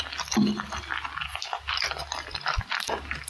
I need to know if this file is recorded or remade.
recorded